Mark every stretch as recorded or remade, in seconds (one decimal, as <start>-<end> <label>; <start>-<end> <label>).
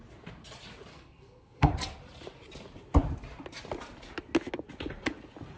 0.0-0.9 recorded; 0.9-1.7 remade; 1.7-5.6 recorded